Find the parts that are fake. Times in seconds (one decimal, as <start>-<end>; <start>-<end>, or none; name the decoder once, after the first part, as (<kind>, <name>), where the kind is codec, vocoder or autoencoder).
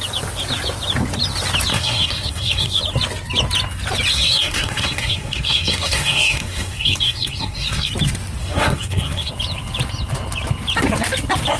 1.7-2.8 (codec, SNAC); 4.1-7.9; 8.4-9.3